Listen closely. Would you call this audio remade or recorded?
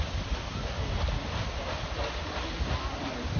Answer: recorded